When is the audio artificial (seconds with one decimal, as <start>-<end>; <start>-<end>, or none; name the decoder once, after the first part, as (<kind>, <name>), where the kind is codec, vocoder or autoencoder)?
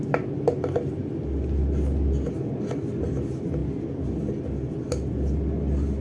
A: none